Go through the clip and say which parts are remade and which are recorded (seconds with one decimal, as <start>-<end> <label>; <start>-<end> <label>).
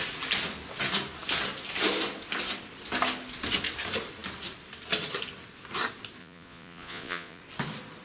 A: 0.0-6.2 recorded; 6.2-7.4 remade; 7.4-8.0 recorded